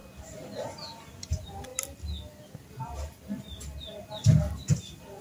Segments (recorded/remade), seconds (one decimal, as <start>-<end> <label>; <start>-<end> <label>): 0.0-5.2 recorded